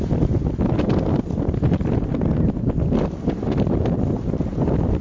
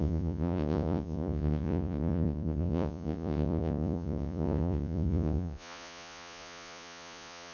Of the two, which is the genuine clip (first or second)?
first